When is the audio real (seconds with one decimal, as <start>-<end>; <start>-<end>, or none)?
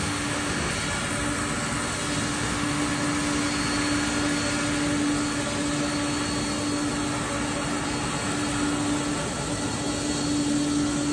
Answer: 0.7-2.3; 2.8-11.1